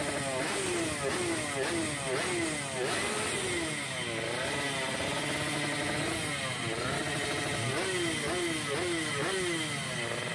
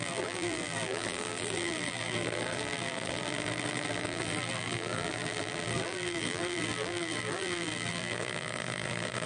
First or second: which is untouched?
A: first